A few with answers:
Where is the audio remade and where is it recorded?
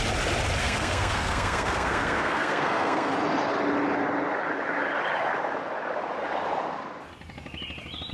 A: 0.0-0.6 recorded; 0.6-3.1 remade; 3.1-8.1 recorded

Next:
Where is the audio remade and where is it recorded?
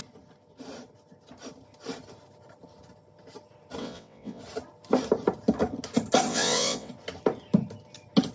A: 0.0-3.8 recorded; 3.8-4.4 remade; 4.4-6.3 recorded; 6.3-6.9 remade; 6.9-8.3 recorded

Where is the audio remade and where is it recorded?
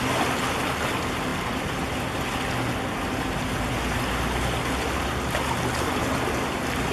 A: 0.0-6.9 recorded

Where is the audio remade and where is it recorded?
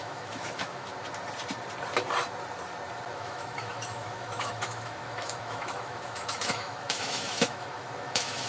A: 0.0-0.9 remade; 0.9-3.1 recorded; 3.1-8.5 remade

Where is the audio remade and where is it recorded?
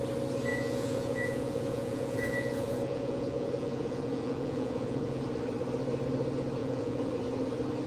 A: 0.0-0.5 recorded; 0.5-5.2 remade; 5.2-6.6 recorded; 6.6-7.1 remade; 7.1-7.9 recorded